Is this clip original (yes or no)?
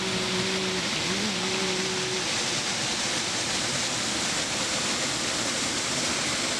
yes